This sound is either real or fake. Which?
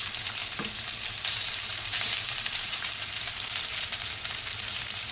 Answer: fake